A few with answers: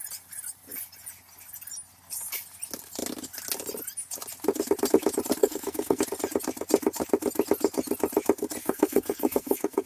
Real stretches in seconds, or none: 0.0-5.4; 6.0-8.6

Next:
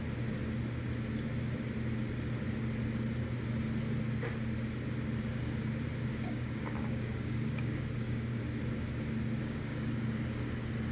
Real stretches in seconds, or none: 0.0-6.1; 8.4-9.4; 9.9-10.9

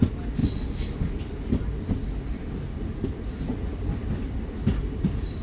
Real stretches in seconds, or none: 0.0-5.4

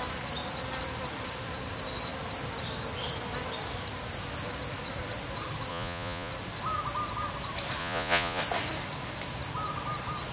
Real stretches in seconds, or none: 0.0-5.7; 6.3-7.8; 8.4-10.3

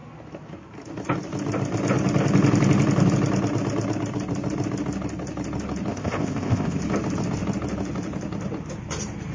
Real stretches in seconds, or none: 0.0-5.9; 6.8-9.3

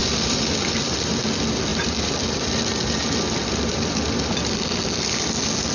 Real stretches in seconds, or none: 1.2-1.7; 4.6-5.7

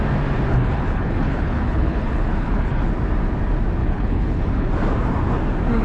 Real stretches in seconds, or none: 0.0-0.5; 2.9-3.8; 4.7-5.8

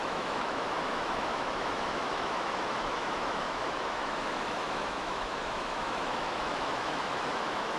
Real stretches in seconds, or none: none